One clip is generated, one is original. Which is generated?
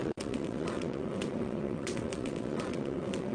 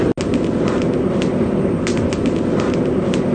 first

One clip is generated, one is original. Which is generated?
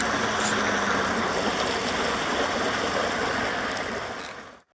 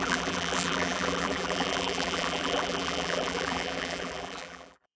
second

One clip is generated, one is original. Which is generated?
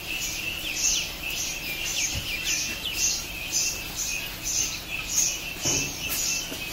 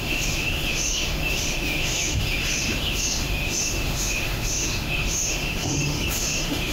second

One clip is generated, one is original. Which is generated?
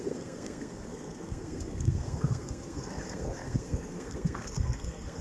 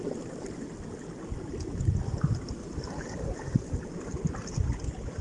first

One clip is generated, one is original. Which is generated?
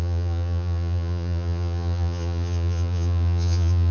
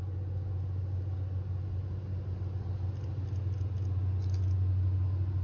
first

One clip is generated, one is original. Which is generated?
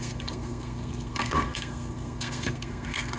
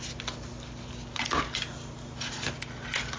first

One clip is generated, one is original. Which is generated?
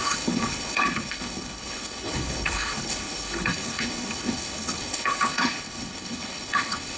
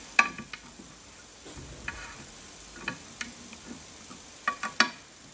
first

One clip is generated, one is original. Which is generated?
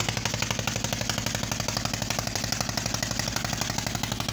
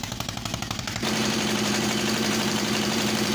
second